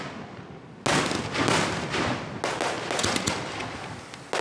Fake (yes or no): no